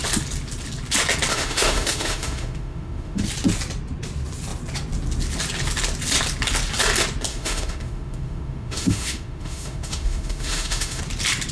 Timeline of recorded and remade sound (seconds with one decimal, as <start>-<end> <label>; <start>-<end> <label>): 0.0-1.3 recorded; 1.3-3.2 remade; 3.2-7.3 recorded; 7.3-11.0 remade; 11.0-11.5 recorded